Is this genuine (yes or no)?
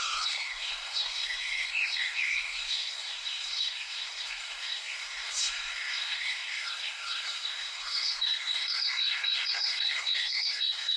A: no